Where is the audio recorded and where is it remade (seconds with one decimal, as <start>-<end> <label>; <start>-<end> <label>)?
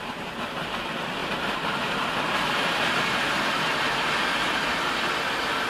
0.0-1.2 recorded; 1.2-3.4 remade; 3.4-5.7 recorded